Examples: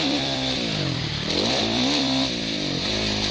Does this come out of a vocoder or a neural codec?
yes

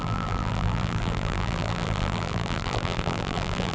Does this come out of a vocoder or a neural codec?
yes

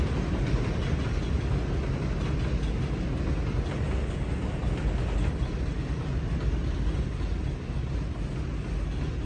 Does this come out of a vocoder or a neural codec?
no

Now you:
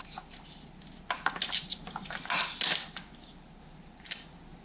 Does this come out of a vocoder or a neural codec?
no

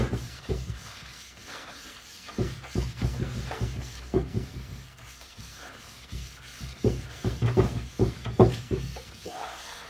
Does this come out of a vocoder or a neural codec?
yes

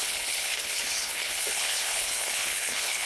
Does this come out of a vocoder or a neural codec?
yes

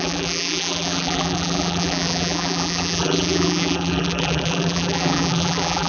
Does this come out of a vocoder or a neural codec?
yes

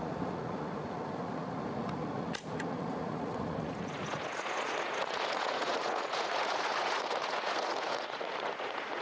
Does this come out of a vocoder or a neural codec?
yes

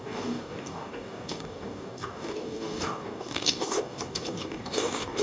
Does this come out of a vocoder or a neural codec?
yes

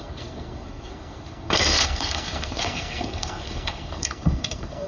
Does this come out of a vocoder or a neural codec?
yes